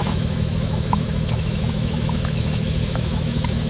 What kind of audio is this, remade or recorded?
remade